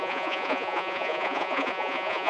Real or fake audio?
fake